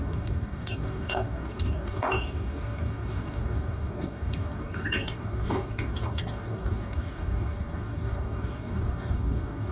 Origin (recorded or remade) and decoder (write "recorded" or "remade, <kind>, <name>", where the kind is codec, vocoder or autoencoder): remade, codec, DAC